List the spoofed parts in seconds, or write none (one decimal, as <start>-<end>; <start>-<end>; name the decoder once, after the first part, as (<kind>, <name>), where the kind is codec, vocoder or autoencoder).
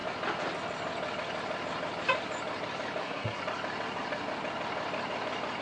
3.0-3.4 (codec, SNAC)